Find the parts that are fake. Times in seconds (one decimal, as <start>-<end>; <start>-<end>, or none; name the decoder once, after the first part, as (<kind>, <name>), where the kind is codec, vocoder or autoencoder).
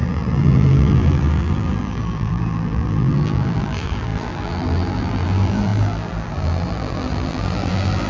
0.0-8.1 (vocoder, BigVGAN v2)